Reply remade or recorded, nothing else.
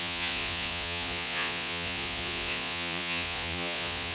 remade